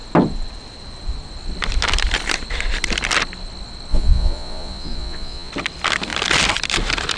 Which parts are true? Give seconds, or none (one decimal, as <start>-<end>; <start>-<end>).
0.0-3.9; 5.5-7.2